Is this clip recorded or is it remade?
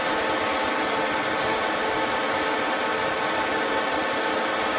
recorded